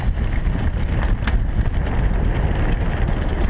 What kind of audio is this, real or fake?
real